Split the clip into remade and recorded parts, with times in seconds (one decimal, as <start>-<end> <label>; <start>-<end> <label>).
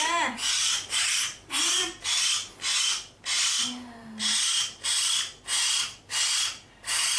0.0-0.4 recorded; 0.4-1.6 remade; 1.6-7.2 recorded